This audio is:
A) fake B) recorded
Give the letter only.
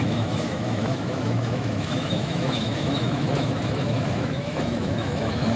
A